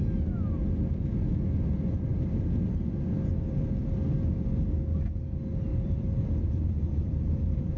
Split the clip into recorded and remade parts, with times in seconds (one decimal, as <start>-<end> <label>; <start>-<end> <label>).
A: 0.0-5.7 recorded; 5.7-7.8 remade